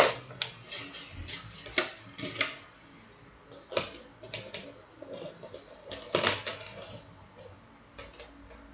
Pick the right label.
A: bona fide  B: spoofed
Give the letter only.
A